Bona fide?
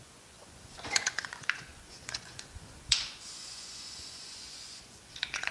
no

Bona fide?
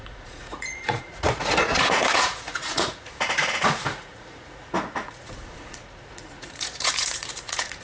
no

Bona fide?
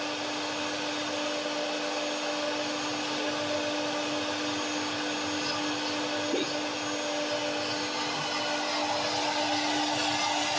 yes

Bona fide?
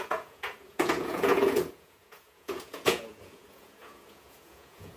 no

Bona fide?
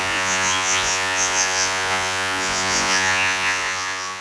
no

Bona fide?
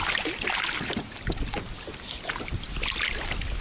yes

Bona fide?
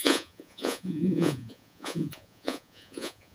no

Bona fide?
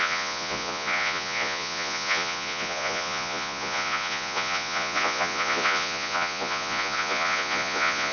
no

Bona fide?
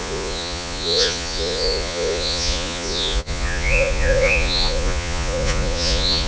no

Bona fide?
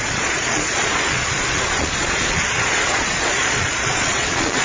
no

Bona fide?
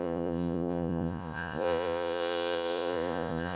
no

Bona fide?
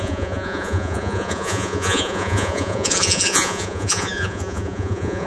no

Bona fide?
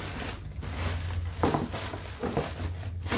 yes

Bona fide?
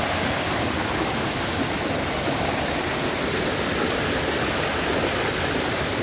yes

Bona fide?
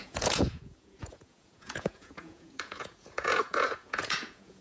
no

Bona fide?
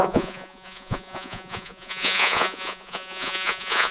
no